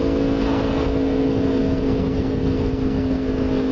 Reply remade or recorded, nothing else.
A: remade